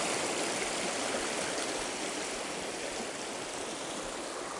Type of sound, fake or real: real